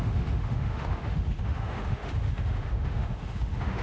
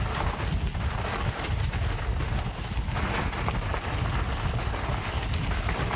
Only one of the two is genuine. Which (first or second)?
second